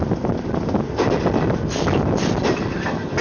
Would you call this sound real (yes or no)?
yes